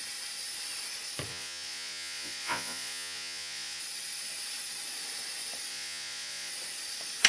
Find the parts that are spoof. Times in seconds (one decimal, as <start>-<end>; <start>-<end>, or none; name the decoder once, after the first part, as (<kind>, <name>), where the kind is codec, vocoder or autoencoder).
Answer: 1.3-3.8 (vocoder, Vocos); 5.7-6.5